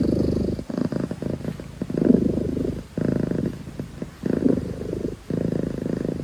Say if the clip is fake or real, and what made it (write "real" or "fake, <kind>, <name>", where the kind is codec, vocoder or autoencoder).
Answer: real